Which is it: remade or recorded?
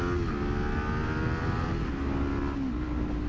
recorded